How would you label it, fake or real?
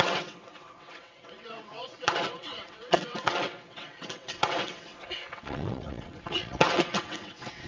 fake